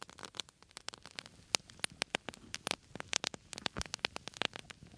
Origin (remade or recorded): recorded